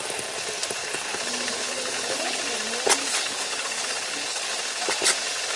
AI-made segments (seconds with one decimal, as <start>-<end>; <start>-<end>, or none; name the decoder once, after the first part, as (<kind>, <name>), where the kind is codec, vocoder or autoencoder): 0.8-2.4 (codec, HILCodec); 3.0-4.5